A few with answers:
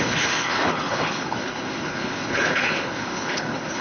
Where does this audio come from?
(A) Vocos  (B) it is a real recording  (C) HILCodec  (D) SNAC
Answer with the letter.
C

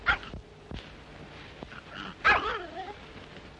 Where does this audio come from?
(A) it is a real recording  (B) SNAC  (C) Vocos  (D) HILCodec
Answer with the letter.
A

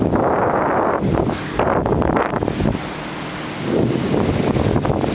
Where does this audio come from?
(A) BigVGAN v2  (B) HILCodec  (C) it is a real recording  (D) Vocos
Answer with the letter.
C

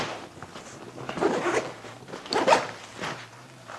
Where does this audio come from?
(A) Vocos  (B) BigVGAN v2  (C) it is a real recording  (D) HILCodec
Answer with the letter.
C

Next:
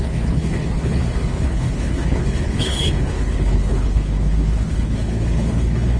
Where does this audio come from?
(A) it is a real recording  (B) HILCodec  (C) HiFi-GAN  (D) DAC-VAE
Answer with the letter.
B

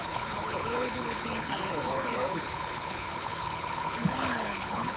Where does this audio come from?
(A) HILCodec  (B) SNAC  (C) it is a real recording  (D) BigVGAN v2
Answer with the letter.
A